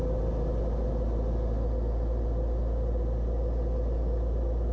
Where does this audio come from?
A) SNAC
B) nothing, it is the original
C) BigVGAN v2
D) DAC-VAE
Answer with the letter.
B